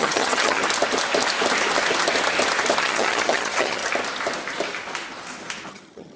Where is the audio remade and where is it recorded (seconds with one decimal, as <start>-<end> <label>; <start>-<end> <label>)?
0.0-0.6 remade; 0.6-2.8 recorded; 2.8-3.8 remade; 3.8-5.7 recorded; 5.7-6.2 remade